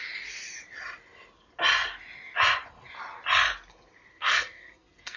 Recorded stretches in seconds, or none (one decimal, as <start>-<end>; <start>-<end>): 0.0-4.1